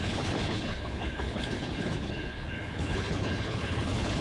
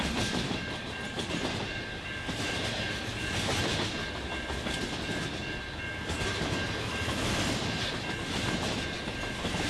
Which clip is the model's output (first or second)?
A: first